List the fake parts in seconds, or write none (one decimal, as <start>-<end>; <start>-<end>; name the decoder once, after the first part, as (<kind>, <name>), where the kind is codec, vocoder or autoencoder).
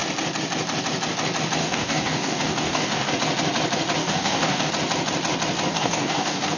1.6-3.1 (codec, DAC); 4.0-4.7; 5.7-6.6